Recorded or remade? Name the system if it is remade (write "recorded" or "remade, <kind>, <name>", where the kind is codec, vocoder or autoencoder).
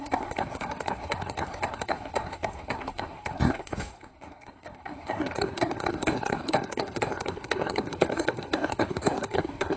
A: remade, codec, SNAC